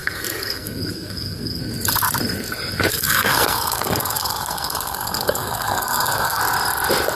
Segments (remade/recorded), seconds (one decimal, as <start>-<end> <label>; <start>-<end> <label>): 0.0-1.6 remade; 1.6-2.9 recorded; 2.9-6.4 remade; 6.4-7.2 recorded